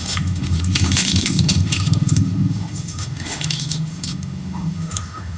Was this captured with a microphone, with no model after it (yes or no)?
no